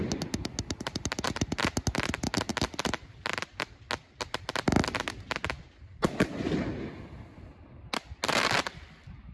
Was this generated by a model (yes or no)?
no